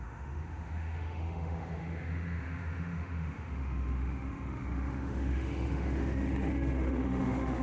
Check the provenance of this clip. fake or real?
fake